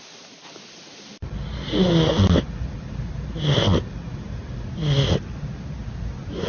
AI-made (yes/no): no